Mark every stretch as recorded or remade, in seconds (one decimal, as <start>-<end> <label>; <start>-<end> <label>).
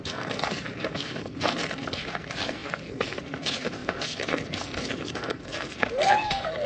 0.0-6.7 remade